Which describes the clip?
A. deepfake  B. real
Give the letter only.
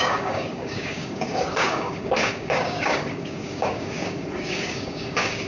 A